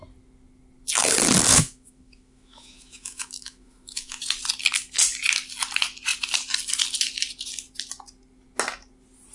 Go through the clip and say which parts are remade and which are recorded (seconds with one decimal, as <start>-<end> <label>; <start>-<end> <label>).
0.0-1.5 recorded; 1.5-4.2 remade; 4.2-9.3 recorded